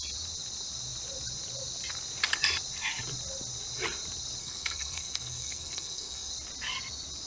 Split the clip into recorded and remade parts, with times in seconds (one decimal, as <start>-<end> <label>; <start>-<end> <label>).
0.0-4.4 recorded; 4.4-6.3 remade; 6.3-7.3 recorded